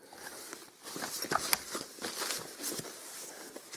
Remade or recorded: recorded